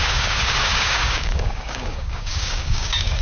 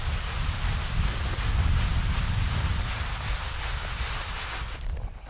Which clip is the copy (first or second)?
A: first